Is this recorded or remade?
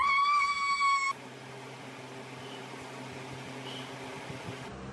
recorded